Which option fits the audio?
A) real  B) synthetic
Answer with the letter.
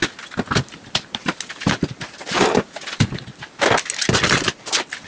A